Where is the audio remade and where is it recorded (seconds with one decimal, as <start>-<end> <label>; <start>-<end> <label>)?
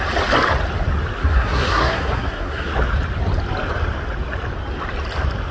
0.0-1.2 recorded; 1.2-2.7 remade; 2.7-5.5 recorded